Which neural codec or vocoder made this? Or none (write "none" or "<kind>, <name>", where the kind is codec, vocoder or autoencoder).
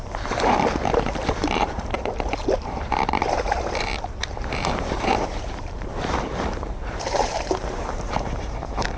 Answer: vocoder, BigVGAN v2